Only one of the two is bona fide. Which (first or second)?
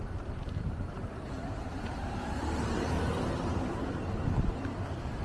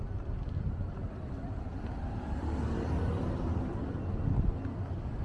second